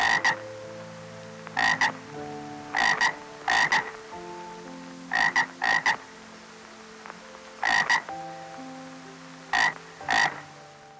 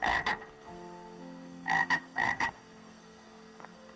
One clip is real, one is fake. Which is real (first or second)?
first